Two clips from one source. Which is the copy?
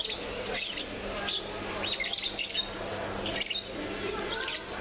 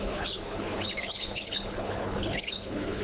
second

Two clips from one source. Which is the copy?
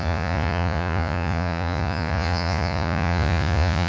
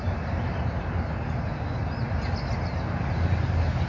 first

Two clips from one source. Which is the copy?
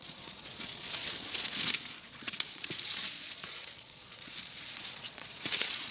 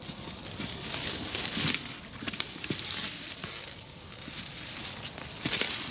first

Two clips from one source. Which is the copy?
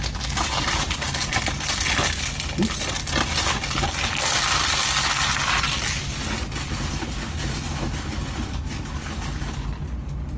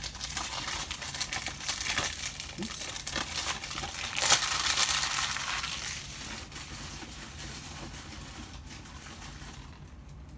second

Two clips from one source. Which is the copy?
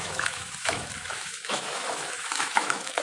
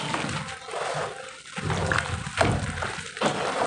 first